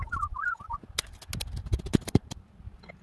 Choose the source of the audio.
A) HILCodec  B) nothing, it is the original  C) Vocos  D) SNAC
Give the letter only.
B